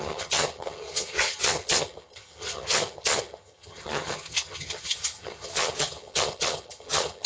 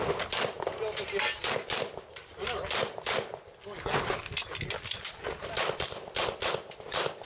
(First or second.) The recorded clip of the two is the second